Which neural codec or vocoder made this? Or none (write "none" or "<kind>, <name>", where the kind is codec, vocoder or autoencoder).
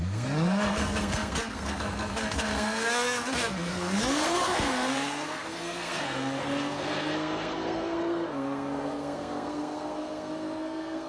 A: codec, SNAC